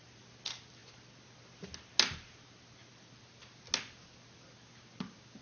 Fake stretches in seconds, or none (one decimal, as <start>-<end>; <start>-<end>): none

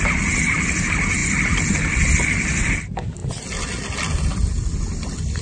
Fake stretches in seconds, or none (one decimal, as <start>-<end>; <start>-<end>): none

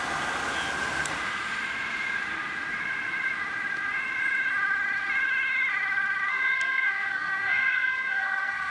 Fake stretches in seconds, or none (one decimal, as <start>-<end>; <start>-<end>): 6.3-8.7

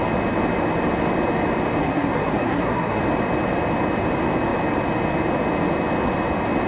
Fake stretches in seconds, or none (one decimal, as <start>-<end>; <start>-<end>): 1.8-3.0